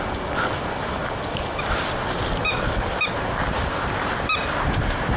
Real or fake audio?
real